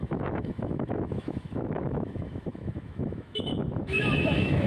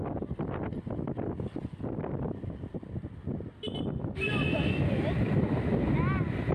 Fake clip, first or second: first